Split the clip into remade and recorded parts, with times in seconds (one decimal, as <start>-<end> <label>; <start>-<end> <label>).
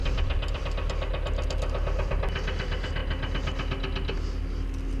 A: 0.0-5.0 recorded